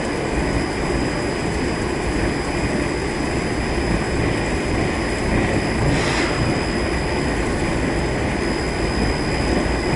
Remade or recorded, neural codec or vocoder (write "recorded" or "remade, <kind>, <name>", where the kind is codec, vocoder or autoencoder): recorded